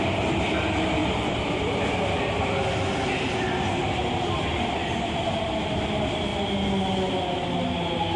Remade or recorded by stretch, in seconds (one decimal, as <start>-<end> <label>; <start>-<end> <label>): 0.0-8.2 recorded